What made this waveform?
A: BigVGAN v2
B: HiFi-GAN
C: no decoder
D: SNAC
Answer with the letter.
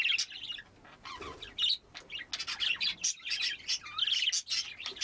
C